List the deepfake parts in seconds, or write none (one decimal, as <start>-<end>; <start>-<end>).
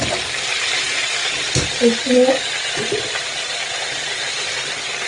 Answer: none